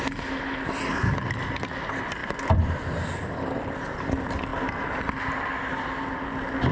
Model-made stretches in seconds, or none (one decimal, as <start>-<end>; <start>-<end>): none